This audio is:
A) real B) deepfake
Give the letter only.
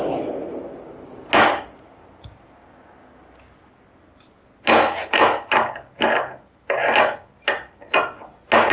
A